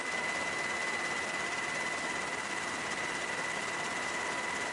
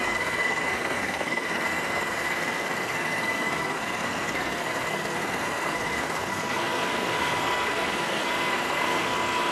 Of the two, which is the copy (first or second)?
second